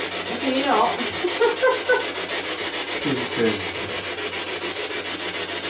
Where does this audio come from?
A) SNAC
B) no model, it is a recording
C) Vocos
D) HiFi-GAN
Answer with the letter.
B